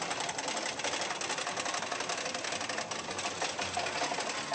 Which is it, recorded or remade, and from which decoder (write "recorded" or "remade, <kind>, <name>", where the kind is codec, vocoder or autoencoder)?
recorded